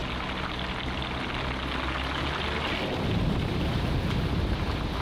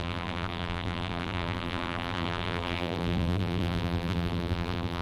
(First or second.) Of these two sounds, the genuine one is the first